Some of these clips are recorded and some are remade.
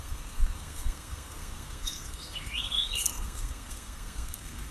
remade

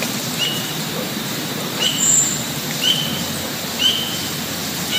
remade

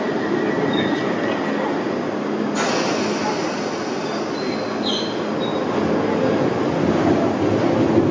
recorded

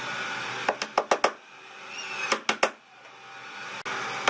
recorded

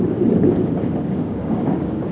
remade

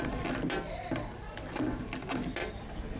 recorded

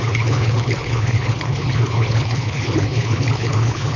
remade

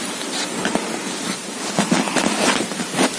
recorded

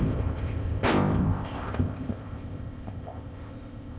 remade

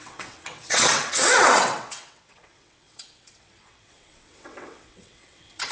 remade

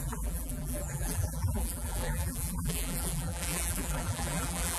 remade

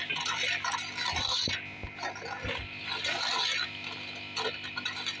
recorded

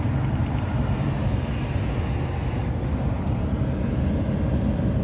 recorded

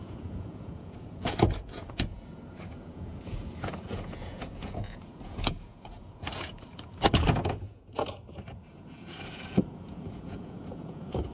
remade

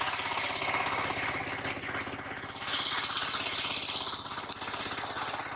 recorded